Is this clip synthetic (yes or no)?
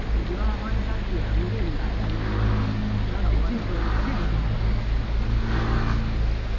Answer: no